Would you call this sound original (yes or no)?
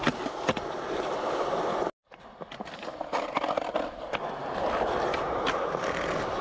yes